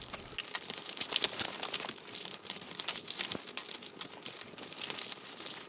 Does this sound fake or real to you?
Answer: real